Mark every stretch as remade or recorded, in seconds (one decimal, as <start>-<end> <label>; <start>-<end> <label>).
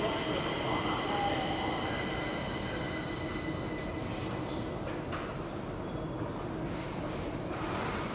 0.0-8.1 recorded